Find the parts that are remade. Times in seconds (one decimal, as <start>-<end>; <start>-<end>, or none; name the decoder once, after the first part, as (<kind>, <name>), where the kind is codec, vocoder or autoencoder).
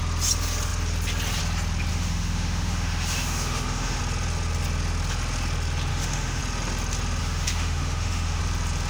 1.9-4.0 (autoencoder, DAC-VAE); 5.9-6.4; 7.2-8.4